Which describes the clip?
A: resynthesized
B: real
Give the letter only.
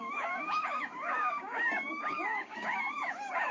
A